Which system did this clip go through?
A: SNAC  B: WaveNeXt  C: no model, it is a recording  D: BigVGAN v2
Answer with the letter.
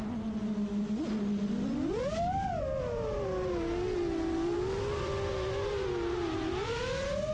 C